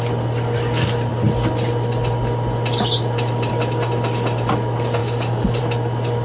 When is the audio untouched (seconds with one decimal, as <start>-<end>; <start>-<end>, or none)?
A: 0.0-5.0; 5.6-6.2